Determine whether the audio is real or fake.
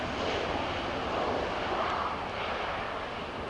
real